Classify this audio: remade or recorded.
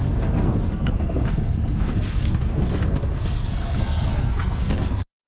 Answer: remade